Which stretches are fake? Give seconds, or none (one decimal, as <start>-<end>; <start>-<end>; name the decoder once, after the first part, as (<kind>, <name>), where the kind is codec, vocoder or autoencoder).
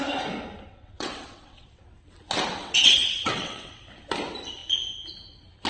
0.7-1.8 (vocoder, WaveNeXt); 2.6-3.7